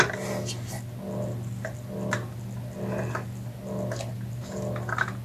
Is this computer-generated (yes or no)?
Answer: no